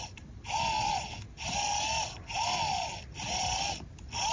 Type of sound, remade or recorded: recorded